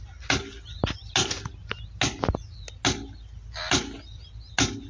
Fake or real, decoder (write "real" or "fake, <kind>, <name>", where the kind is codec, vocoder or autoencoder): real